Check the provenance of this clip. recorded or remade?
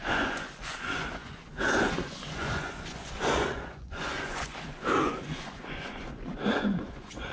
remade